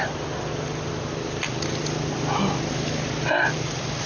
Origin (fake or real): real